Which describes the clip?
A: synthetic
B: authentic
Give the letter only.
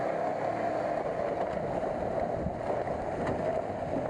B